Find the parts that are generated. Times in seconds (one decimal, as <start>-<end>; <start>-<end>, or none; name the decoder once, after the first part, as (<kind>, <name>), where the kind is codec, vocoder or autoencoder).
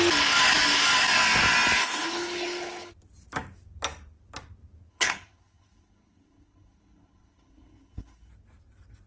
1.8-2.9 (codec, HILCodec); 4.9-8.3